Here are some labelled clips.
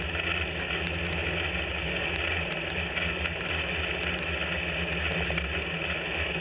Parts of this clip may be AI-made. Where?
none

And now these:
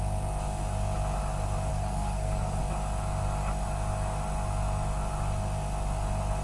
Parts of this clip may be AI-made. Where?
1.7-2.6 (codec, SNAC)

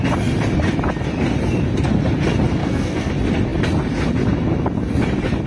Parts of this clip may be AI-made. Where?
2.6-3.1 (codec, SNAC)

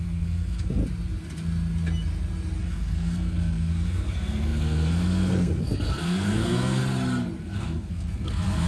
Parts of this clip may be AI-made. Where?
0.0-0.8 (codec, SNAC); 2.6-6.8; 7.4-8.7

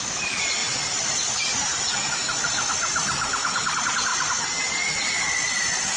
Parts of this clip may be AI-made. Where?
none

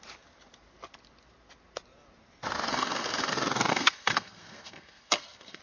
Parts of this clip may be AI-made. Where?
2.7-3.3 (codec, SNAC); 3.7-5.6

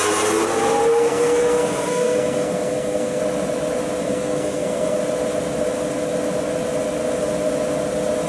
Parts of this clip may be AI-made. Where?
0.9-3.2 (codec, SNAC); 4.0-5.0

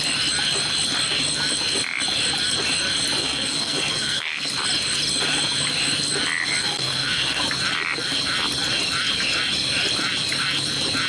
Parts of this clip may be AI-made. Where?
3.2-4.5 (codec, SNAC); 6.6-7.4